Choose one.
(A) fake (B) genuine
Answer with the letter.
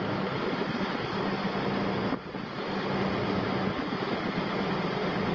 B